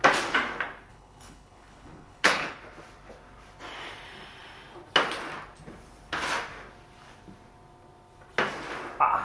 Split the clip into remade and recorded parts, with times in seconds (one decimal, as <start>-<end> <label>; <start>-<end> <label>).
0.0-0.9 recorded; 0.9-2.6 remade; 2.6-9.2 recorded